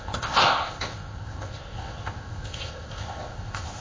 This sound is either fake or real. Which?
fake